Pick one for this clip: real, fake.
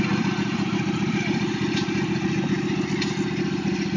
real